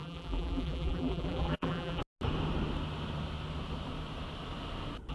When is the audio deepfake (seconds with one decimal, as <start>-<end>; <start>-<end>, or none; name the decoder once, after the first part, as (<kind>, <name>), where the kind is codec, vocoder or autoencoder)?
0.0-2.0 (vocoder, BigVGAN v2)

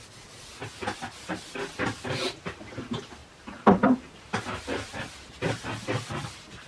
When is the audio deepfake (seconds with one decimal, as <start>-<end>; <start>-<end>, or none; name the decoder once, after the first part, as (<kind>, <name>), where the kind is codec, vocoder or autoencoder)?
3.2-6.1 (vocoder, BigVGAN v2)

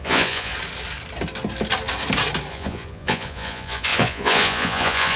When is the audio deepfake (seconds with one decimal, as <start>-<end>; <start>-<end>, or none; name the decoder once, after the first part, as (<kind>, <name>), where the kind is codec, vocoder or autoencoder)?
0.0-0.5 (vocoder, Vocos); 2.5-5.2